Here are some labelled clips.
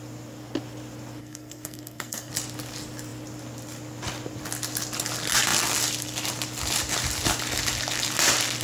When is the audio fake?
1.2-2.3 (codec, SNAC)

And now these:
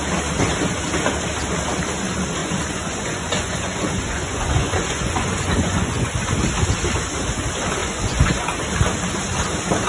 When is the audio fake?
2.4-6.3 (vocoder, Vocos); 7.8-8.4

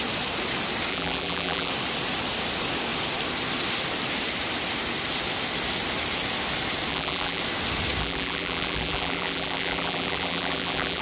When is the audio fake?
0.9-1.7 (vocoder, BigVGAN v2); 6.9-7.4; 8.0-11.0

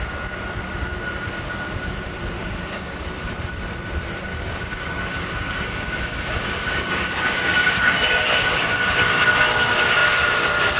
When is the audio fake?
2.4-3.2 (codec, DAC); 4.3-8.9

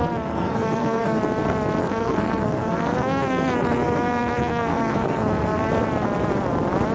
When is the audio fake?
0.0-1.2 (codec, SNAC); 1.8-5.7

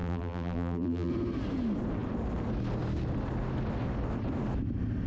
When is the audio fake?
0.0-1.1 (vocoder, BigVGAN v2)

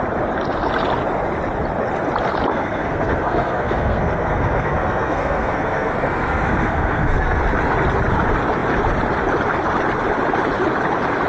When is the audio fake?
2.5-7.4 (codec, SNAC)